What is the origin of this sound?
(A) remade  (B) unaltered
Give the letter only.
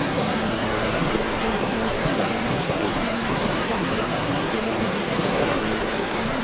A